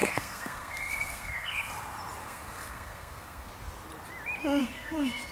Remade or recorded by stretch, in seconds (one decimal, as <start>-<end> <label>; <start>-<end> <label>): 0.0-1.7 remade; 1.7-2.2 recorded; 2.2-3.5 remade; 3.5-4.6 recorded; 4.6-5.3 remade

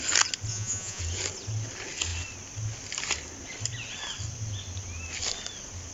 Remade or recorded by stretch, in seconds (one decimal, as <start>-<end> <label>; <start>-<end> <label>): 0.0-0.5 recorded; 0.5-1.0 remade; 1.0-5.9 recorded

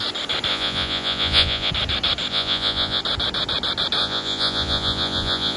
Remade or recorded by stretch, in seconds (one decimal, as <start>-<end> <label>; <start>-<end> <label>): 0.0-0.5 recorded; 0.5-1.7 remade; 1.7-2.3 recorded; 2.3-3.0 remade; 3.0-4.0 recorded; 4.0-5.6 remade

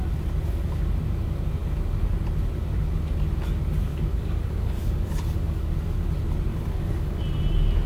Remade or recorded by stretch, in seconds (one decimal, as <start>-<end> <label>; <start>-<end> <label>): 0.0-3.9 recorded; 3.9-5.7 remade; 5.7-6.5 recorded; 6.5-7.2 remade; 7.2-7.9 recorded

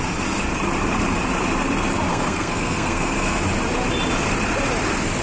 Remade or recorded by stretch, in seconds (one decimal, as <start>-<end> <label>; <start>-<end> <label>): 0.0-2.1 recorded; 2.1-3.4 remade; 3.4-5.2 recorded

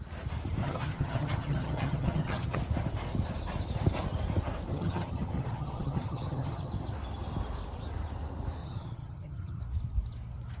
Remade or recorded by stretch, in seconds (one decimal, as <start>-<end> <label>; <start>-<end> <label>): 0.0-0.6 recorded; 0.6-2.6 remade; 2.6-4.7 recorded; 4.7-6.7 remade; 6.7-8.6 recorded; 8.6-9.6 remade; 9.6-10.6 recorded

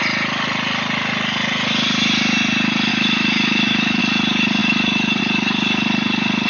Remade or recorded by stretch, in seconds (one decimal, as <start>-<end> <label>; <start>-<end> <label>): 0.0-2.9 recorded; 2.9-4.0 remade; 4.0-6.5 recorded

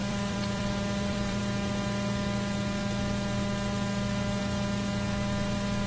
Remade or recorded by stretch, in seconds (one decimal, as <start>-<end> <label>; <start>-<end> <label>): 0.0-1.4 remade; 1.4-5.9 recorded